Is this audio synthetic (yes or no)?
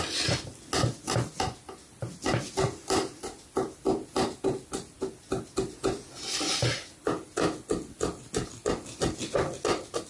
no